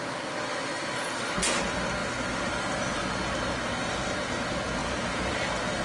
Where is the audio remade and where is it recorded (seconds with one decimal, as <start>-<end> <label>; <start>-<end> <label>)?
0.0-4.8 recorded; 4.8-5.8 remade